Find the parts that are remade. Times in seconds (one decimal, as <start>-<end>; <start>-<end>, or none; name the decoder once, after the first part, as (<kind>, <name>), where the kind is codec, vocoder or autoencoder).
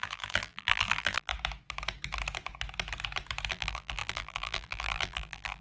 0.0-1.3 (vocoder, BigVGAN v2); 3.5-5.6